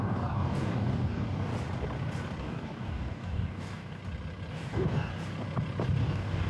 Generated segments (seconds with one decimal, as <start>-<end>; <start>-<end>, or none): 0.0-1.5; 2.4-4.0; 4.5-5.1; 6.0-6.5